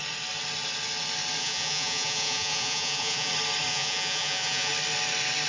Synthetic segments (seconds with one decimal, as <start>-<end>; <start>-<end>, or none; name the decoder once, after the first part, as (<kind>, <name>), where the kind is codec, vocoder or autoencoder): 1.4-3.3 (vocoder, Vocos); 3.7-4.7